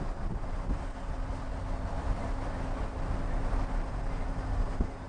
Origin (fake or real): real